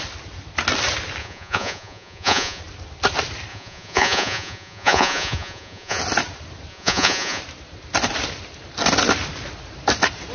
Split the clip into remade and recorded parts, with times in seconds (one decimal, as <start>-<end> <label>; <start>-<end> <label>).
0.0-1.2 recorded; 1.2-2.6 remade; 2.6-3.5 recorded; 3.5-6.0 remade; 6.0-6.7 recorded; 6.7-7.4 remade; 7.4-10.3 recorded